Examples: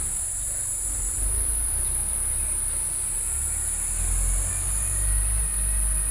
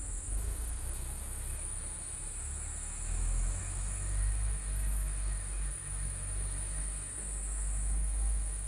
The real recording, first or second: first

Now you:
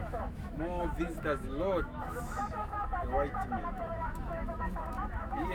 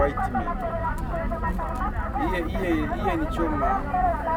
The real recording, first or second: second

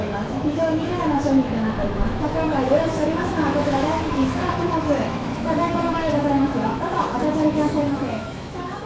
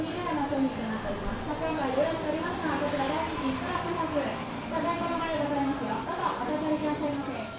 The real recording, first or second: second